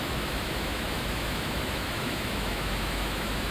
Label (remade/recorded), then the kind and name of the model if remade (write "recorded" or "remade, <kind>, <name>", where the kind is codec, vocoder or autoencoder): remade, autoencoder, DAC-VAE